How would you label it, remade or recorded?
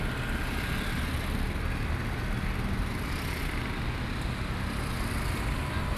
recorded